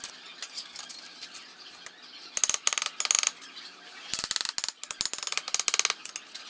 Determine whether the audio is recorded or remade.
recorded